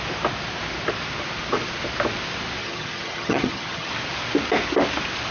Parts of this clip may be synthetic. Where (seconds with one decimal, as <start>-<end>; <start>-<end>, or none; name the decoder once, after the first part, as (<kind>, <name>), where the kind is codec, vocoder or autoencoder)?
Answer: 2.6-3.9 (vocoder, HiFi-GAN)

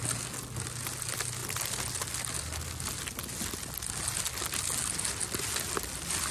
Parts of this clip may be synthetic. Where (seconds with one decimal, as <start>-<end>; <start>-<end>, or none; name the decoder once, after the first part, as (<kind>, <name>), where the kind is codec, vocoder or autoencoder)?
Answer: none

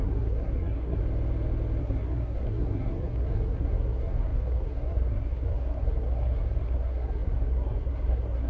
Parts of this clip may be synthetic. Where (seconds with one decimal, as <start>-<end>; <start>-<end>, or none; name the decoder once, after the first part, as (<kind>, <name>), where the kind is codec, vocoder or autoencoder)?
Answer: 0.0-1.0 (codec, SNAC); 1.8-8.5

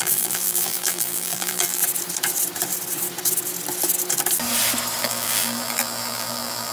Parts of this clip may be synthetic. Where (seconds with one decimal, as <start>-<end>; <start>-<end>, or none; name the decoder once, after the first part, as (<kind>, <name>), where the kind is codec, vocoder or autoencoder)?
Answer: 0.0-1.8 (vocoder, BigVGAN v2); 5.0-6.7

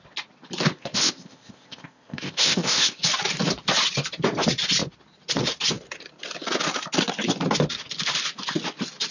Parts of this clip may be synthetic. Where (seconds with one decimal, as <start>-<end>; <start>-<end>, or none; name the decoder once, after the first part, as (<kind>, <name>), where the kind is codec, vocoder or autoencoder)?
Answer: 0.7-3.0 (codec, ZipCodec)

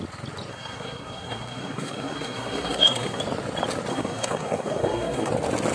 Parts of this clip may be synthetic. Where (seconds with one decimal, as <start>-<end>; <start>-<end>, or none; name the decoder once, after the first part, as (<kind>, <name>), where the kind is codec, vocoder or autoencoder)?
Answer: 0.5-3.2 (codec, SNAC); 3.9-5.3